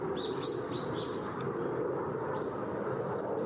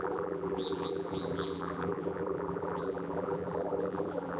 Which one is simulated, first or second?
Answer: second